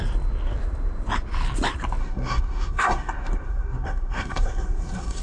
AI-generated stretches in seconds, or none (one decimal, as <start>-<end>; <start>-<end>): 2.0-5.2